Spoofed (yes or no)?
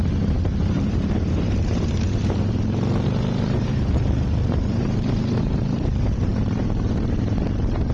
yes